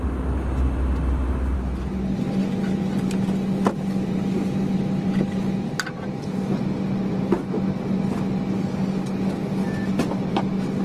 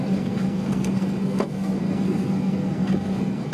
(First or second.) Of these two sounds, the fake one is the second